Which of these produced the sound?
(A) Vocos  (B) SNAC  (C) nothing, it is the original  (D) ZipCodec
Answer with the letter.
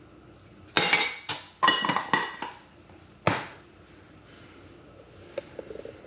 C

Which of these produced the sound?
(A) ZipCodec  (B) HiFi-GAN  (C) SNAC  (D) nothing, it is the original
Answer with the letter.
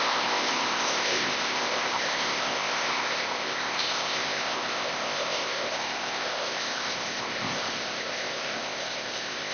A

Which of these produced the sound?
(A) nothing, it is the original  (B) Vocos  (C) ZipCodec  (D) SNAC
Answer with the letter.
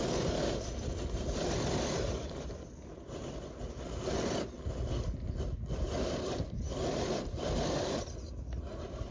A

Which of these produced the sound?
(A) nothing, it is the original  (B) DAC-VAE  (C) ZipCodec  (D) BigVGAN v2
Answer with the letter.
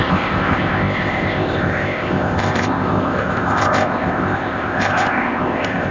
C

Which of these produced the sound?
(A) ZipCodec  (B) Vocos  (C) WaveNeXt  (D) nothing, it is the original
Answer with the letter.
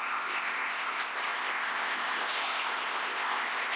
A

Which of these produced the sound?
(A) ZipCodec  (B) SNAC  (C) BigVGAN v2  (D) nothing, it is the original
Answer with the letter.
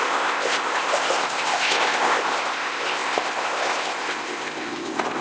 A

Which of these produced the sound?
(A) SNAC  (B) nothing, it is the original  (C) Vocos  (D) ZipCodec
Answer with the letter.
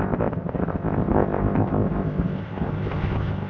D